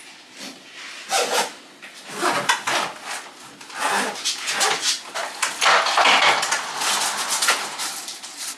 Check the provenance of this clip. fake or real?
real